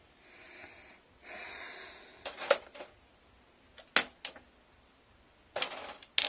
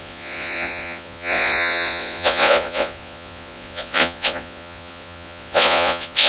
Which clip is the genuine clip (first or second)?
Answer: first